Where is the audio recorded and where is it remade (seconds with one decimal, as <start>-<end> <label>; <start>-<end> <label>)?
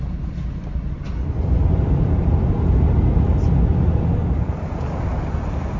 0.0-5.8 recorded